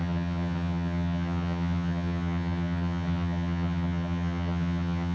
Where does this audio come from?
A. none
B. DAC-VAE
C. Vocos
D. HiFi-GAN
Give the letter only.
D